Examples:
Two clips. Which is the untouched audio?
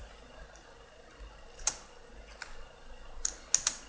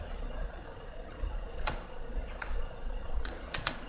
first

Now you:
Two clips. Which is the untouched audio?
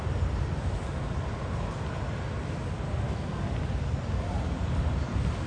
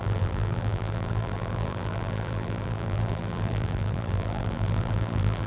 first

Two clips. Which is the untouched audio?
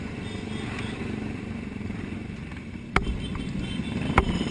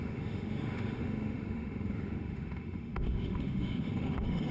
first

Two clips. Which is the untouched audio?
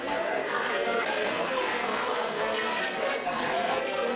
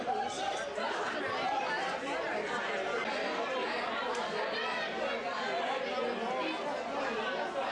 second